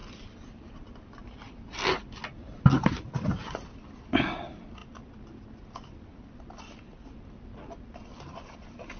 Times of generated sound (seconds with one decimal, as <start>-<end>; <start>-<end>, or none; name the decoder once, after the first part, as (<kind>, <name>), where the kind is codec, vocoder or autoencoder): none